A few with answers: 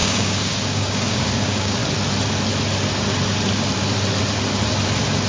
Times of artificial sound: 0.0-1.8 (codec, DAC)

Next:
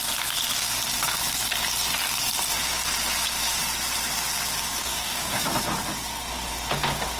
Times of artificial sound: 4.8-5.5 (codec, DAC)

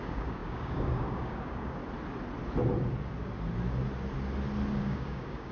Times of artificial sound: 0.0-1.8 (codec, DAC); 4.8-5.5

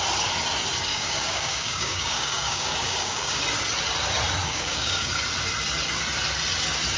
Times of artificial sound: 0.9-3.4 (codec, DAC); 4.4-5.1

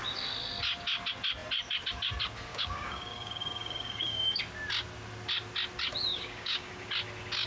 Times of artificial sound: 2.5-4.4 (codec, DAC); 6.1-6.7

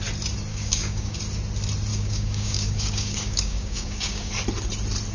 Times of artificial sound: 0.5-1.2 (codec, DAC); 1.9-4.3

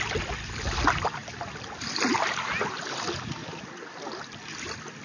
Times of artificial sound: none